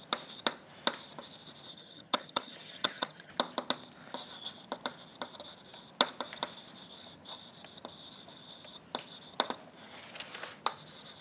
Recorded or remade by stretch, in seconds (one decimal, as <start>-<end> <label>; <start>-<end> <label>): 0.0-1.7 recorded; 1.7-3.3 remade; 3.3-11.2 recorded